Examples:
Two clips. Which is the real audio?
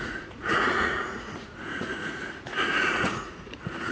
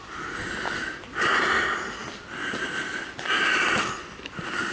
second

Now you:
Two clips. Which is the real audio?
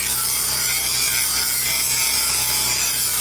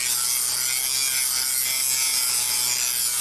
second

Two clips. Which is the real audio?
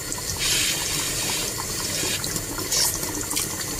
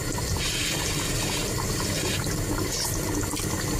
second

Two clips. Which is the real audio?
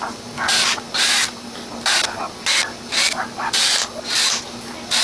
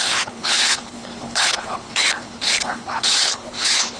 first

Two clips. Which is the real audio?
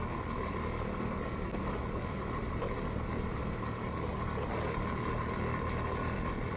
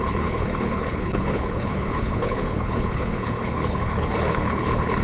first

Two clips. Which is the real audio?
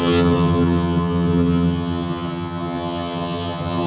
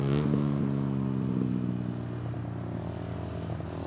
second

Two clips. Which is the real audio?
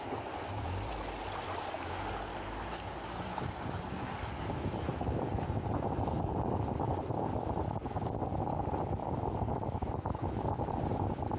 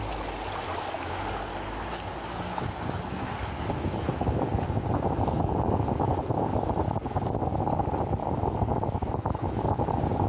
second